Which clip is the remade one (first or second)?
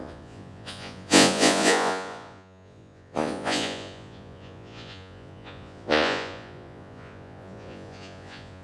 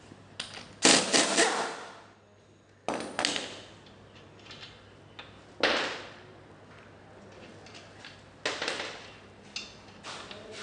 first